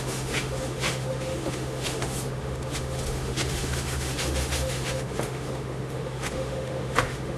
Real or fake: fake